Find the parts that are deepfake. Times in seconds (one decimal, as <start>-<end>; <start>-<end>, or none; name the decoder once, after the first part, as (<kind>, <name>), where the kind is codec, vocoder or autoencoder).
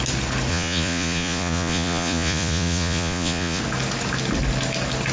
0.5-3.6 (vocoder, Vocos)